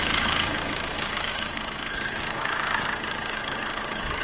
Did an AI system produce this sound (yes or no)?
yes